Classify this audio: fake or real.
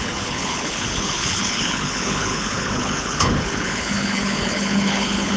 fake